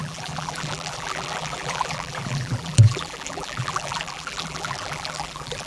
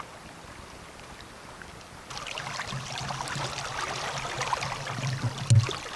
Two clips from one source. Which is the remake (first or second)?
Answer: first